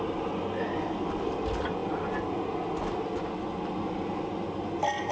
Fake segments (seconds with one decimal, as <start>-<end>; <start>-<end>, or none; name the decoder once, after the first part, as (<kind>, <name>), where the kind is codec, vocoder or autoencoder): none